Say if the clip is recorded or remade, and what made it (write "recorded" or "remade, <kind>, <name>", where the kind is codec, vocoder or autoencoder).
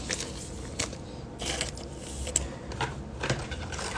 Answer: recorded